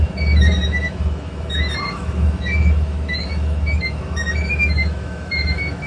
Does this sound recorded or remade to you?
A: remade